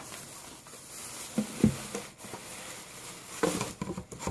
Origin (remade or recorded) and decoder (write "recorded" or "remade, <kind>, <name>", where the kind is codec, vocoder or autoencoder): recorded